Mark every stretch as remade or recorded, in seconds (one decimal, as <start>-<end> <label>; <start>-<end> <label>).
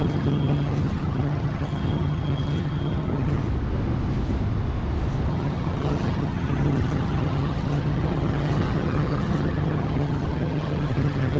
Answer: 0.0-3.4 remade; 3.4-5.3 recorded; 5.3-11.4 remade